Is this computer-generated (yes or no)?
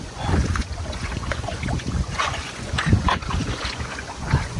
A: yes